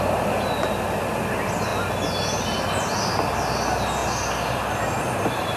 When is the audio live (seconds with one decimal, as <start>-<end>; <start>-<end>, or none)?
0.0-5.6